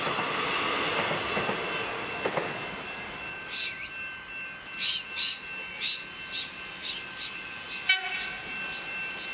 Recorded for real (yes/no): yes